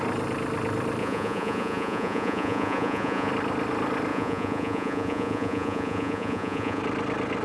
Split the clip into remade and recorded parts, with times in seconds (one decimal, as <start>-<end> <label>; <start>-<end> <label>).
0.0-1.0 recorded; 1.0-3.3 remade; 3.3-4.1 recorded; 4.1-6.8 remade; 6.8-7.4 recorded

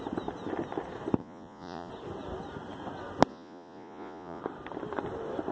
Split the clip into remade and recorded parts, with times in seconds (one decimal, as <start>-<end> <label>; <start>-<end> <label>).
0.0-1.2 recorded; 1.2-1.9 remade; 1.9-3.3 recorded; 3.3-4.4 remade; 4.4-5.5 recorded